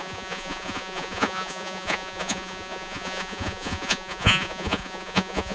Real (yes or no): no